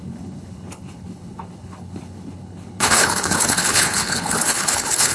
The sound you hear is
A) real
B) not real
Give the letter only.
B